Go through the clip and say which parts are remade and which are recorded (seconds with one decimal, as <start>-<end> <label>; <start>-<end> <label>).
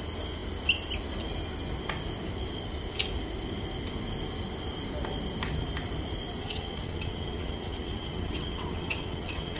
0.0-6.4 recorded; 6.4-9.6 remade